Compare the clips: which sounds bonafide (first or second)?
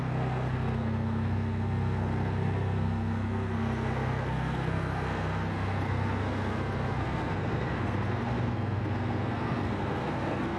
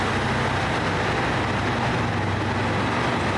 second